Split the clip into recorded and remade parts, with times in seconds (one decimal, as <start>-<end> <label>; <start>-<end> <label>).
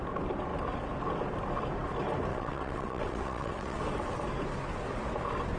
0.0-2.3 recorded; 2.3-3.8 remade; 3.8-5.6 recorded